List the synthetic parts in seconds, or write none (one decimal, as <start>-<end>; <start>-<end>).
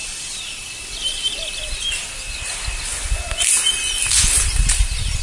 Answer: none